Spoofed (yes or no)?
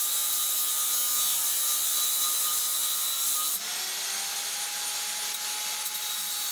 no